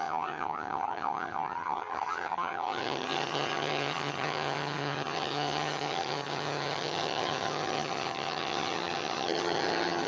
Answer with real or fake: fake